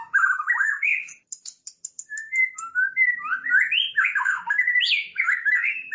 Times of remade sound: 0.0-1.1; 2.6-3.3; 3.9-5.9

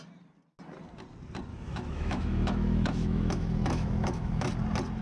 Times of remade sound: 1.5-4.5

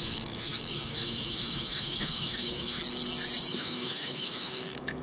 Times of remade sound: 0.0-2.8; 3.5-5.0

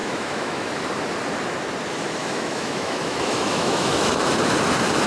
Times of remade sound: 0.0-0.7; 2.2-4.3

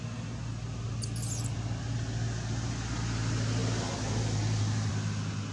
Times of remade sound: none

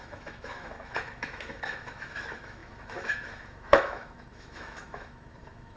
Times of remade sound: 0.0-5.8

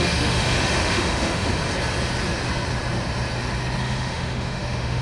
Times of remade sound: 0.0-1.5; 3.8-5.0

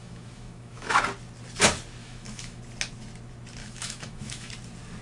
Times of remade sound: 0.0-1.0; 2.0-2.6; 3.6-4.5